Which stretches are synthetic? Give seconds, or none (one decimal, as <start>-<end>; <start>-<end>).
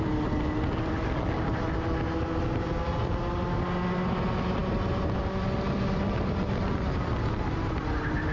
none